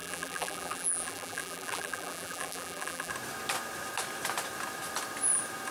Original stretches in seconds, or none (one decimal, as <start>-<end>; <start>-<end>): 3.1-5.7